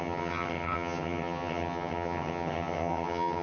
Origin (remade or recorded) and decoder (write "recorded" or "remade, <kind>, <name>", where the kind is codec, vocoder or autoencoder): remade, vocoder, HiFi-GAN